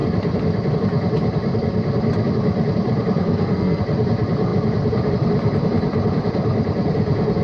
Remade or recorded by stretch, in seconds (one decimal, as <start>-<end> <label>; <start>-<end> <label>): 0.0-3.2 recorded; 3.2-3.8 remade; 3.8-7.4 recorded